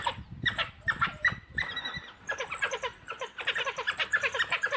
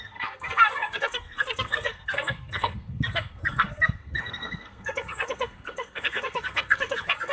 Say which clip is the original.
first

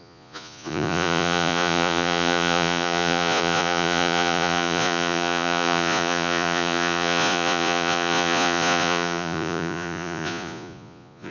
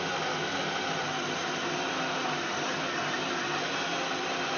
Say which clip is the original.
second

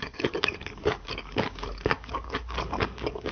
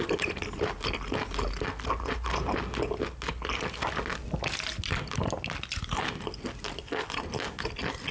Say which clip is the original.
second